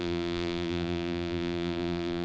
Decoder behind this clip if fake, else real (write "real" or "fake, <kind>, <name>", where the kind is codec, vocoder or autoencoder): fake, vocoder, BigVGAN v2